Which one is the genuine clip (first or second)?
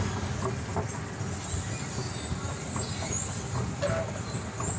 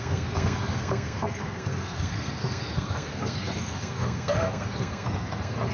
first